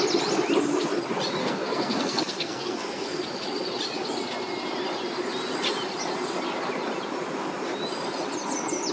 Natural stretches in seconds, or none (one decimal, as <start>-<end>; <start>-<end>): 0.0-1.4; 3.2-8.9